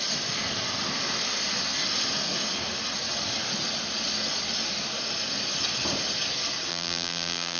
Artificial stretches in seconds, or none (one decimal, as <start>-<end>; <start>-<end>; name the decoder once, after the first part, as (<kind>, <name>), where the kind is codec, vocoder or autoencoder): 6.7-7.6 (vocoder, BigVGAN v2)